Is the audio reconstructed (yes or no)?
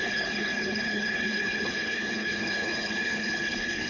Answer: yes